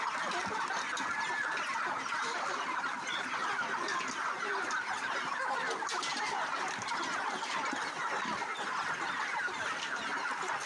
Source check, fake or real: real